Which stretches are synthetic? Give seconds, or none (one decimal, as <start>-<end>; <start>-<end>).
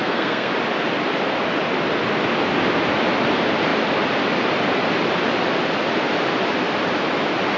0.0-0.5